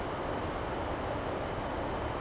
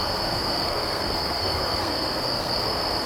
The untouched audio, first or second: first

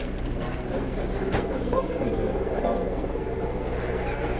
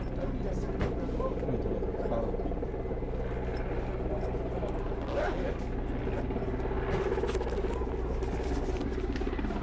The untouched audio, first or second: second